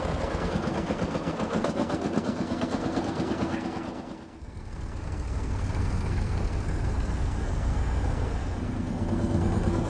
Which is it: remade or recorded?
remade